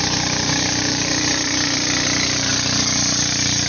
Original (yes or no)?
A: no